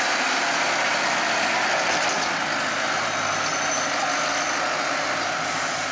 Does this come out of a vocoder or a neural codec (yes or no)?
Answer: no